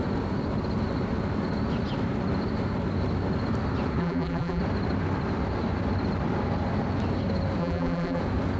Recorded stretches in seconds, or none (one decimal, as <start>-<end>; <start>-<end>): 0.0-4.0; 4.6-7.6; 8.2-8.6